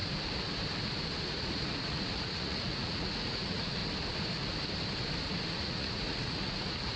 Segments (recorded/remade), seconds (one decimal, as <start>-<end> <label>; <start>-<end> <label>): 0.0-1.2 recorded; 1.2-3.8 remade; 3.8-5.5 recorded; 5.5-7.0 remade